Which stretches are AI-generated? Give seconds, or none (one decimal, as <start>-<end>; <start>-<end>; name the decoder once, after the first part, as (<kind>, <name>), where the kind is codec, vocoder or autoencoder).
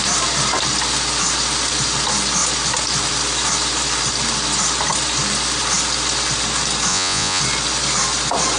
6.9-7.4 (vocoder, Vocos)